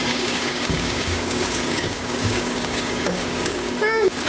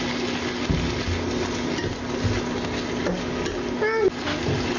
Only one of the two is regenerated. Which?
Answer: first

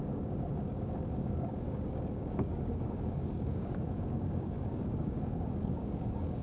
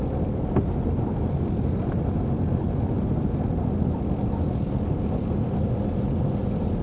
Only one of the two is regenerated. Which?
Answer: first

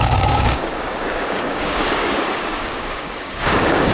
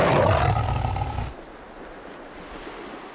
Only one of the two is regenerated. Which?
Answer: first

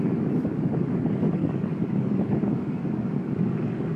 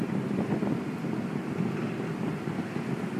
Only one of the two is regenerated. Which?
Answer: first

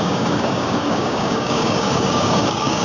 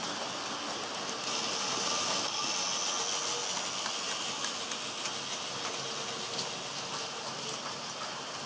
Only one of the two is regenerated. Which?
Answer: first